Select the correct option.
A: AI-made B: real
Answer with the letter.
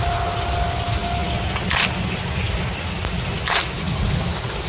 B